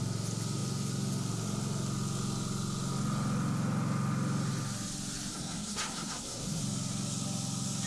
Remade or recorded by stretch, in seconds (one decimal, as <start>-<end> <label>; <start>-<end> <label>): 0.0-5.3 recorded; 5.3-6.6 remade; 6.6-7.9 recorded